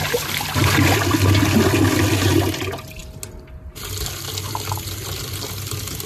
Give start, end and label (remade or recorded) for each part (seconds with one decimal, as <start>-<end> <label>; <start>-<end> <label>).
0.0-6.1 recorded

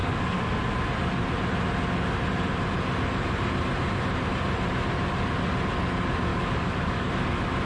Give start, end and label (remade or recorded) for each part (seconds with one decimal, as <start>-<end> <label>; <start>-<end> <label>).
0.0-0.5 remade; 0.5-6.3 recorded; 6.3-7.1 remade; 7.1-7.7 recorded

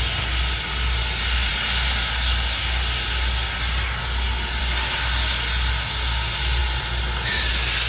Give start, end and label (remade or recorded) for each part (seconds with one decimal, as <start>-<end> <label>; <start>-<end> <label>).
0.0-7.9 recorded

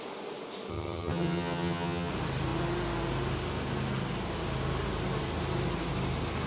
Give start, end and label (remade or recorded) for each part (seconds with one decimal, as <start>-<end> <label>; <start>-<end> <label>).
0.0-0.7 recorded; 0.7-2.1 remade; 2.1-6.5 recorded

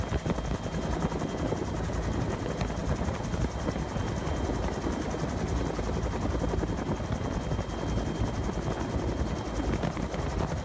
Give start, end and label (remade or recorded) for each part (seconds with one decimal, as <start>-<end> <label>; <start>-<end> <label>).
0.0-10.6 recorded

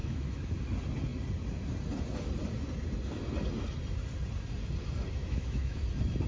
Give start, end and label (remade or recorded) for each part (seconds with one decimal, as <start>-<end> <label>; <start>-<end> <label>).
0.0-0.5 remade; 0.5-5.2 recorded; 5.2-5.8 remade; 5.8-6.3 recorded

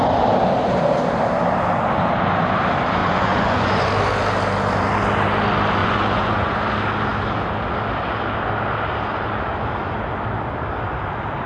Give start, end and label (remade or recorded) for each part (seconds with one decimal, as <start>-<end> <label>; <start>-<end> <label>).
0.0-3.0 recorded; 3.0-3.9 remade; 3.9-5.8 recorded; 5.8-6.5 remade; 6.5-11.5 recorded